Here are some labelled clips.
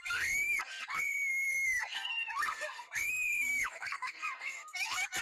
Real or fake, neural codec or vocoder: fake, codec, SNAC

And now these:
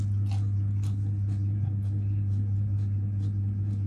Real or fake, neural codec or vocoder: real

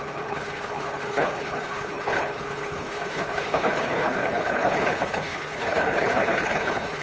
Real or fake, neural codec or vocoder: fake, codec, HILCodec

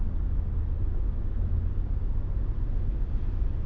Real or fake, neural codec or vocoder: real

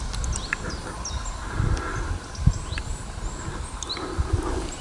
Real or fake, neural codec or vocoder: real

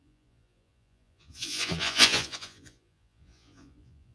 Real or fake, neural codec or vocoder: fake, vocoder, Vocos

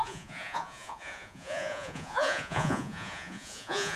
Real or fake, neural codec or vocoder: fake, vocoder, Vocos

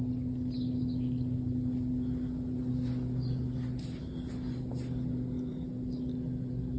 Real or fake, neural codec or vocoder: real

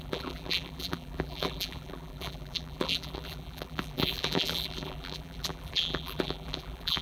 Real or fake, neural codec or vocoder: fake, vocoder, BigVGAN v2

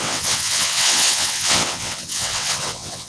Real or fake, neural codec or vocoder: fake, vocoder, WaveNeXt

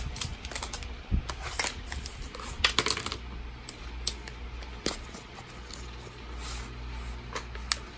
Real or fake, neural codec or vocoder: real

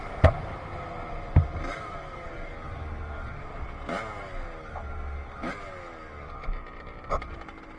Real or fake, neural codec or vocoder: real